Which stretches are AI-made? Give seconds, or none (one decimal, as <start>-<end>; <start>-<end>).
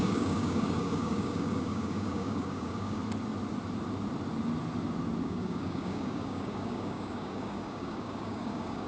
0.0-3.0; 5.2-8.9